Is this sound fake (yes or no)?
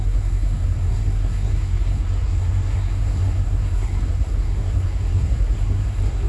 yes